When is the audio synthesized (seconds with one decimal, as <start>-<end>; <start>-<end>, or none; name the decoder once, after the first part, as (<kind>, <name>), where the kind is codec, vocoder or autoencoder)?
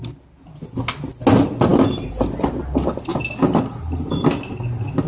none